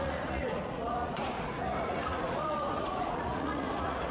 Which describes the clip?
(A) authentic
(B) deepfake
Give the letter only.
B